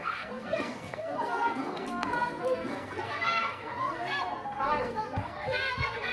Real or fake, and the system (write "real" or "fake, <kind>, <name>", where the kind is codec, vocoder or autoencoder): fake, codec, SNAC